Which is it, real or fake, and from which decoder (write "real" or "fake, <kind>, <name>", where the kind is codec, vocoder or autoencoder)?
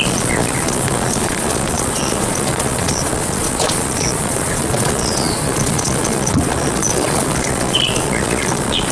fake, vocoder, Vocos